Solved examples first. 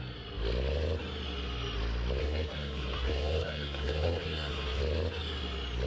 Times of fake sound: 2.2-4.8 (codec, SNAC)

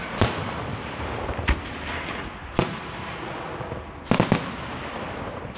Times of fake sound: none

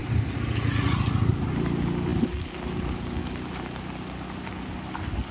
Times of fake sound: none